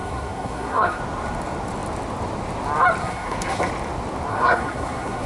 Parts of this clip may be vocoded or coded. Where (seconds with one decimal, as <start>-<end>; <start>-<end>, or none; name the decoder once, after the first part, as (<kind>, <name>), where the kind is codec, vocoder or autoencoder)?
0.0-1.0 (codec, SNAC); 3.0-3.7; 4.3-5.3

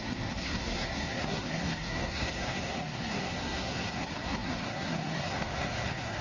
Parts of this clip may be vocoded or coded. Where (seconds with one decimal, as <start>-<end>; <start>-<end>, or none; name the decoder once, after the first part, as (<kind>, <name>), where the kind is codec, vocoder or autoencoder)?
0.0-6.2 (codec, SNAC)

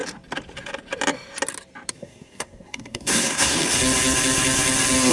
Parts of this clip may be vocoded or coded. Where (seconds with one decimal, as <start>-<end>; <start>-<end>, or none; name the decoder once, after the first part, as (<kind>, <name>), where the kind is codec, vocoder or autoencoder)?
1.9-3.6 (codec, SNAC)

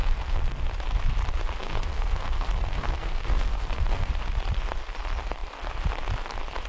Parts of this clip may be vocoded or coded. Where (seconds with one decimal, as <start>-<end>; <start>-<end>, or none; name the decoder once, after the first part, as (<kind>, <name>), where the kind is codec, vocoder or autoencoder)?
0.0-0.7 (codec, SNAC); 1.6-4.1